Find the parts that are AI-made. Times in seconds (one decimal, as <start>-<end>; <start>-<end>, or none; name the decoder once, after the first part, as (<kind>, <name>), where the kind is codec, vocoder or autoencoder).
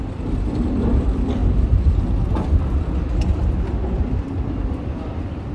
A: none